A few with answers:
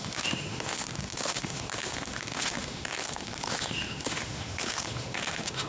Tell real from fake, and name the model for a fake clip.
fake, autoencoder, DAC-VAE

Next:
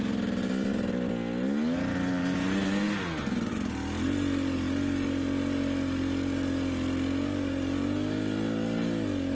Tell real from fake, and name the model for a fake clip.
real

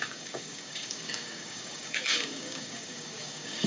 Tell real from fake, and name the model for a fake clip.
fake, codec, DAC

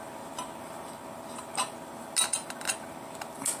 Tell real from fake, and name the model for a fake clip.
real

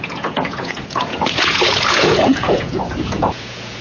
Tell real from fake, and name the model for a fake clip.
fake, vocoder, Vocos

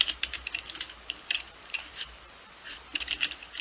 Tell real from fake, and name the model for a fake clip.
fake, vocoder, BigVGAN v2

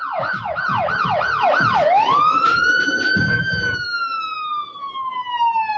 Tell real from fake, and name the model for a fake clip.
real